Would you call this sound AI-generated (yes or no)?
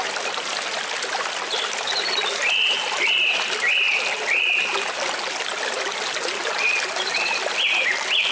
no